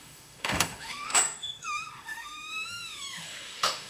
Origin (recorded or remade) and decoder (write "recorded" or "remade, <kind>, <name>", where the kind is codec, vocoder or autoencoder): remade, autoencoder, DAC-VAE